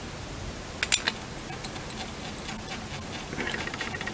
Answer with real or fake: real